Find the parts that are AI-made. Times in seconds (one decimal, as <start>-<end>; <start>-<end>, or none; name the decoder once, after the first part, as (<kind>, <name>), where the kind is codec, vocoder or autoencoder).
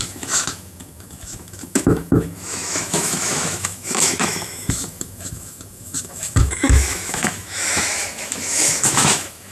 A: 0.0-9.5 (autoencoder, DAC-VAE)